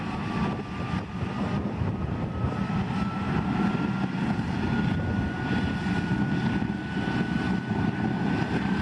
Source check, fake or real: real